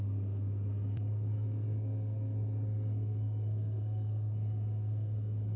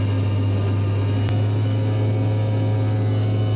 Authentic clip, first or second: second